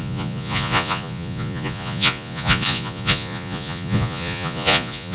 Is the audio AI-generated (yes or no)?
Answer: yes